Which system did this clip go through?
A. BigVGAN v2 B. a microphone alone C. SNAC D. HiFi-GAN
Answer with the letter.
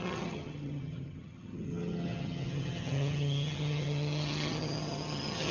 D